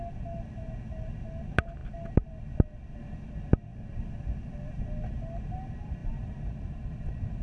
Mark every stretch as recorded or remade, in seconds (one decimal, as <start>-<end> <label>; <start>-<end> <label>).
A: 0.0-3.7 recorded; 3.7-4.8 remade; 4.8-7.4 recorded